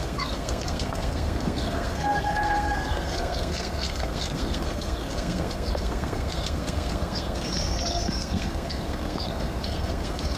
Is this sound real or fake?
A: fake